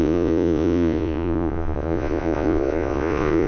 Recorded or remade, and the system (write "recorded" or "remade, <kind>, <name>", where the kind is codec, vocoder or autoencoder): remade, vocoder, Vocos